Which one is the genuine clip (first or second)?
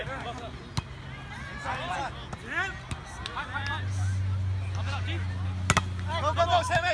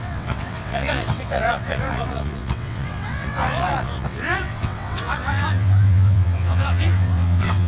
first